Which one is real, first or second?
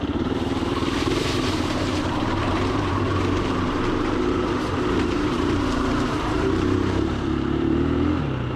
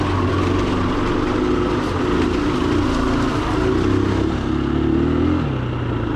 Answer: second